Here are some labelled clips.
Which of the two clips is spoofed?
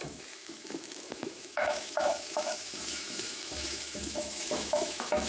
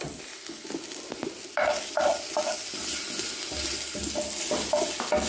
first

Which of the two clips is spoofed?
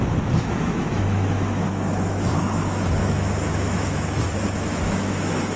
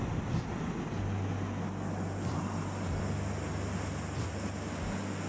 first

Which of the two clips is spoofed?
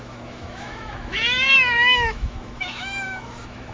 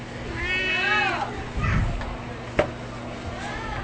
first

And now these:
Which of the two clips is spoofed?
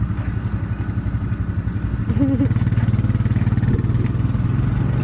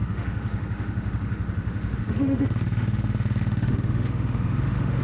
second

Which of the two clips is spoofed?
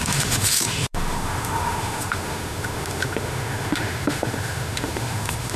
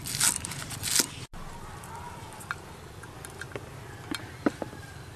first